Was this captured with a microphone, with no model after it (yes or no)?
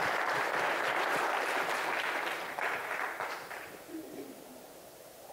no